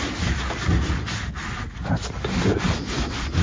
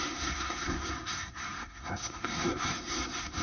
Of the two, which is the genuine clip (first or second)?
first